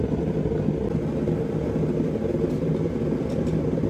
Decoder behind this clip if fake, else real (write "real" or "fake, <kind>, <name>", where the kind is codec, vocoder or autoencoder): real